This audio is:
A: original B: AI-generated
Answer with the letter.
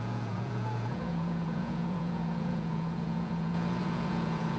B